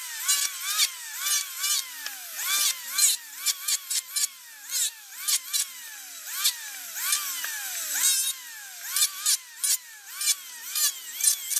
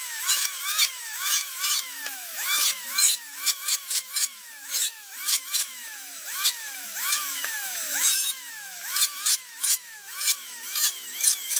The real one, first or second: first